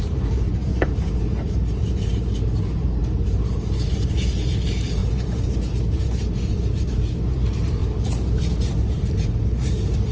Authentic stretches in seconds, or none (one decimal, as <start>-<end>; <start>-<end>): none